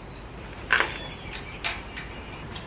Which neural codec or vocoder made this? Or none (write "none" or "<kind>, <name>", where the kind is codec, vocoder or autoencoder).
none